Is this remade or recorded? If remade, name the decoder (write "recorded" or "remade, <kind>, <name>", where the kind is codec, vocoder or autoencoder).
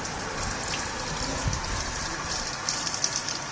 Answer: recorded